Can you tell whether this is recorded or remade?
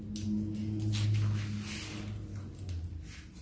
recorded